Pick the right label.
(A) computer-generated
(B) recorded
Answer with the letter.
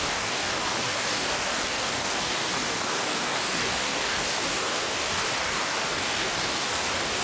A